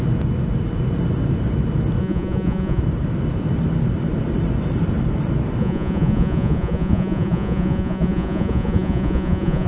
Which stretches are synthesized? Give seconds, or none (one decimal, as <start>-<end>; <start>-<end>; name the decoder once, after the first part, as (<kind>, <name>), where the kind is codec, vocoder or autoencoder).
2.0-2.8 (vocoder, Vocos); 5.6-9.7